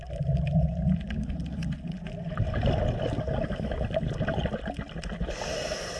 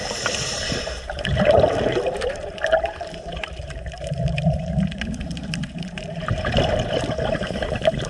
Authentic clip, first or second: first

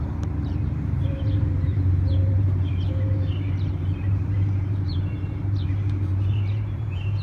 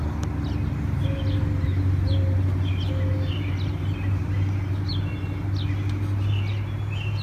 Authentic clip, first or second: second